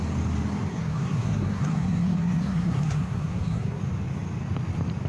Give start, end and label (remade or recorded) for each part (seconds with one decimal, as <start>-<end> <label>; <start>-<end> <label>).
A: 0.0-0.7 recorded; 0.7-3.8 remade; 3.8-5.1 recorded